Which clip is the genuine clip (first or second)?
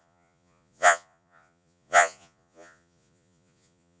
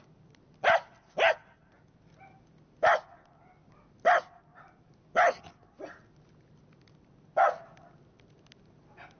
second